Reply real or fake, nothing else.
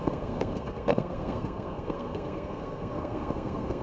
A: fake